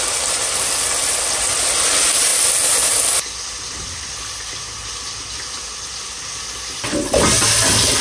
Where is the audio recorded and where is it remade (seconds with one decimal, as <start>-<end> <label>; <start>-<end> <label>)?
0.0-8.0 recorded